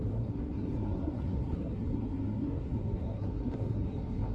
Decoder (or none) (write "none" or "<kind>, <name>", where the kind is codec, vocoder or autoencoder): codec, SNAC